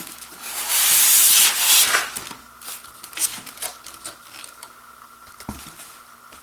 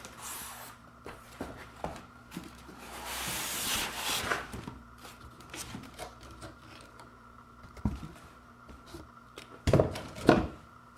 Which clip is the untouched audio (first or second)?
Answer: first